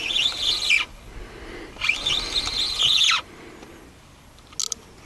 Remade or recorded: recorded